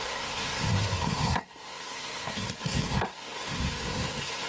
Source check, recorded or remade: remade